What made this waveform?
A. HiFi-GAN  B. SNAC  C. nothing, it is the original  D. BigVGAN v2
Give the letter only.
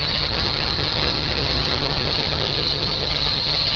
A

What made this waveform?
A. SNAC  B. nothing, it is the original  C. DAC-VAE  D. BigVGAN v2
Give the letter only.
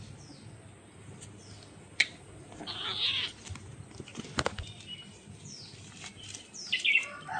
B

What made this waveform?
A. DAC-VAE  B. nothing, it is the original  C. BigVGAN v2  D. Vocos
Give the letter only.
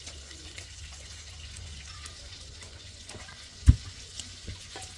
D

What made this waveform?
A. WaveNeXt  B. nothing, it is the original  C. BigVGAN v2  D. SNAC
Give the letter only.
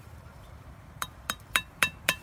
C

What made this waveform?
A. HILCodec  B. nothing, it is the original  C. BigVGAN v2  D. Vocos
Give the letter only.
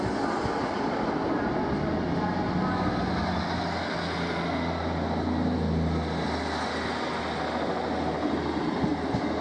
B